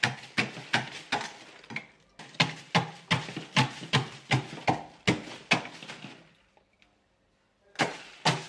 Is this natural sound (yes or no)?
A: yes